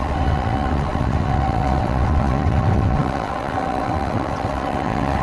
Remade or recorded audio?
remade